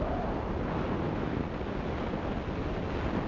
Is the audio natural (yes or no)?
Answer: yes